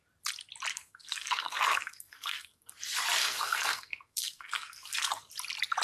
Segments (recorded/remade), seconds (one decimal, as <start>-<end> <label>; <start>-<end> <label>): 0.0-0.7 recorded; 0.7-2.7 remade; 2.7-3.2 recorded; 3.2-5.3 remade; 5.3-5.8 recorded